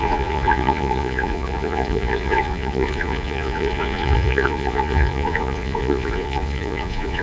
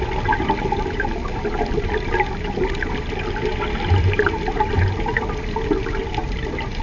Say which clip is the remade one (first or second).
first